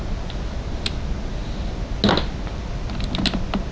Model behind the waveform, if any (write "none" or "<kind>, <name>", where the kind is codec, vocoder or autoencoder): none